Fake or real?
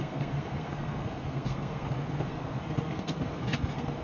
fake